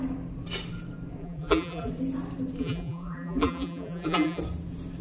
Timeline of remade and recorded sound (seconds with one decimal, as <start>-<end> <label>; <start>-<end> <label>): 0.0-1.2 recorded; 1.2-1.9 remade; 1.9-2.6 recorded; 2.6-4.4 remade; 4.4-5.0 recorded